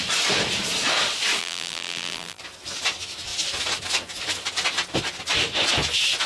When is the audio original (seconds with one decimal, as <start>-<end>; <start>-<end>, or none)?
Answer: 0.0-1.4; 2.4-6.3